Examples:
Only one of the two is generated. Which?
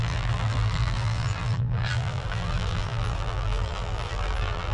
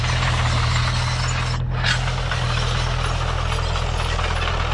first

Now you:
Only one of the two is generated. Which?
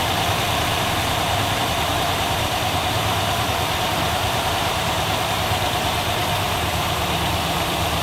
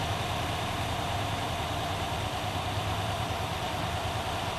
first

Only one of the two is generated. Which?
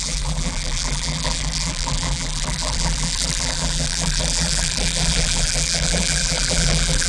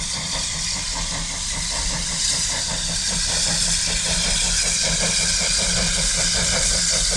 first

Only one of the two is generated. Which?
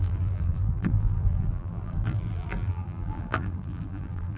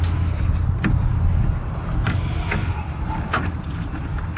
first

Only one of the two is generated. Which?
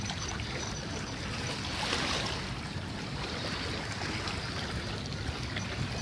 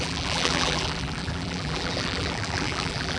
second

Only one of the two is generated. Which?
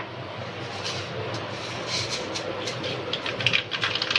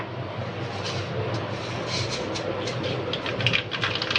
first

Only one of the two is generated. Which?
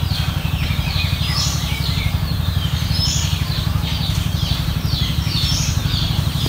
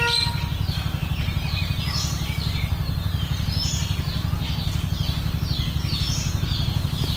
first